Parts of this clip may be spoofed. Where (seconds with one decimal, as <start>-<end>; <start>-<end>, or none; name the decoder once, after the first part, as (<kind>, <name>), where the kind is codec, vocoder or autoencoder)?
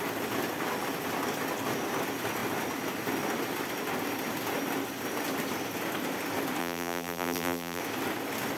6.6-7.8 (vocoder, BigVGAN v2)